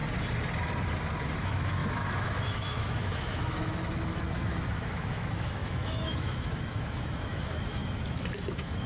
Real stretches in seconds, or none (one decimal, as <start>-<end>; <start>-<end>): 0.0-1.4